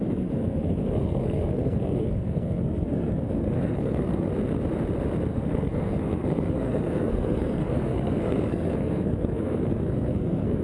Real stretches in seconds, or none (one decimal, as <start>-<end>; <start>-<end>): 4.3-5.3